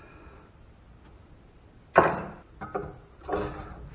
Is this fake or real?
real